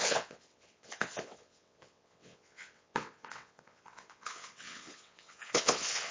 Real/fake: fake